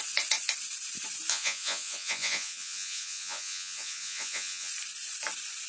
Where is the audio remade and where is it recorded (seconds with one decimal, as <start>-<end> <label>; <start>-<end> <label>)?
0.0-1.3 recorded; 1.3-4.7 remade; 4.7-5.7 recorded